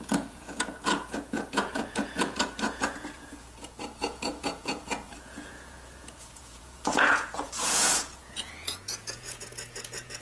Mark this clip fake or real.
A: fake